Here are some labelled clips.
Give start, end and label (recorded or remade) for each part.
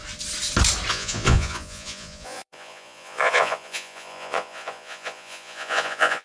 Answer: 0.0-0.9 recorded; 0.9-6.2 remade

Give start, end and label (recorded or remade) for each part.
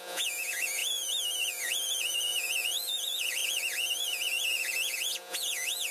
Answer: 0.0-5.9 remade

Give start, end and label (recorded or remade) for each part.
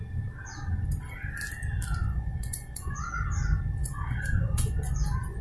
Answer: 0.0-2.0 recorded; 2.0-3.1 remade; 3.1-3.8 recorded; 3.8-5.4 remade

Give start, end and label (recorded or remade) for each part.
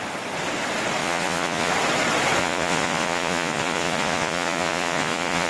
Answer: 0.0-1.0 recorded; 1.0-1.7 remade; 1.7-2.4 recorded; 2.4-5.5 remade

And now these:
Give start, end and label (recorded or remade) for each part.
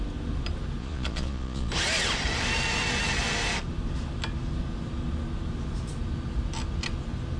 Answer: 0.0-0.8 recorded; 0.8-1.7 remade; 1.7-7.4 recorded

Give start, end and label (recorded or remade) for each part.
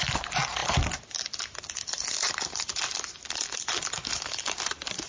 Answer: 0.0-5.1 recorded